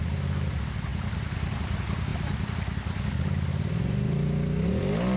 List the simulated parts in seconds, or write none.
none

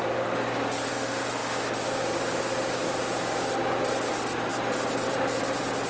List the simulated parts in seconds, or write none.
none

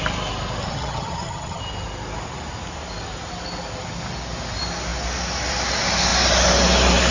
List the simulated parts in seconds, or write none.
0.6-1.6 (vocoder, HiFi-GAN)

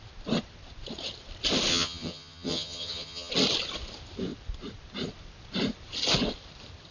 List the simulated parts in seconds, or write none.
1.7-3.3 (vocoder, HiFi-GAN)